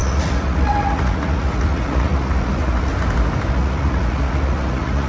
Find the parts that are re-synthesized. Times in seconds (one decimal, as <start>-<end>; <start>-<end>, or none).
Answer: 0.0-2.9; 3.5-5.1